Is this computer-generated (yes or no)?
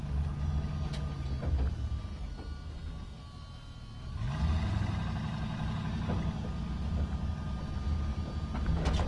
no